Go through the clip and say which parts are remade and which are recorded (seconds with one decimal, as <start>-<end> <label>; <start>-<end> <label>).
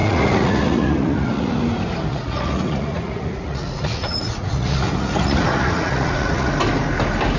0.0-1.6 remade; 1.6-2.1 recorded; 2.1-6.5 remade; 6.5-7.4 recorded